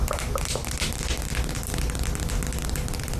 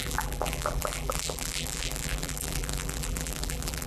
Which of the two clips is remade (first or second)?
second